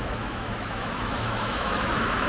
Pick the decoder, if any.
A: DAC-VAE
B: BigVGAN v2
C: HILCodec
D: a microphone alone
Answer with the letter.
A